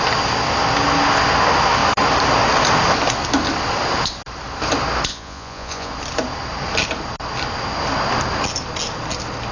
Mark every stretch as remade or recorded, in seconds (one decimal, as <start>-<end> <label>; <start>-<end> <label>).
0.0-5.1 recorded; 5.1-5.9 remade; 5.9-9.5 recorded